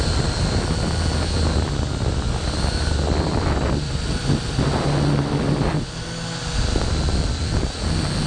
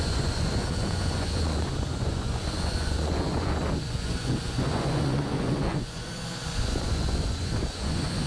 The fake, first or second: second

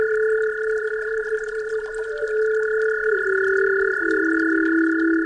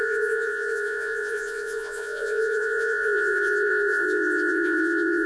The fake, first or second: second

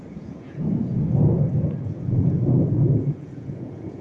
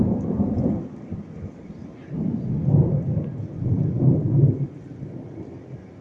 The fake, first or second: first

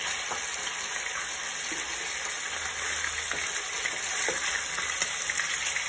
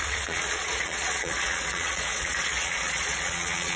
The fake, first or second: second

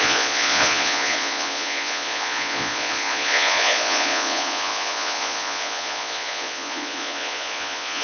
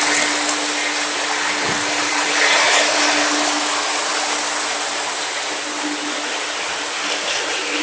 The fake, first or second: first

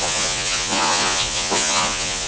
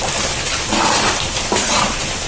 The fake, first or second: first